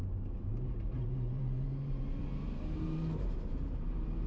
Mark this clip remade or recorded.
remade